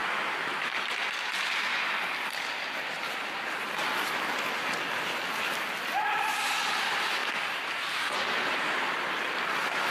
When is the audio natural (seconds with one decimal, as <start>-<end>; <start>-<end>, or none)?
0.0-9.9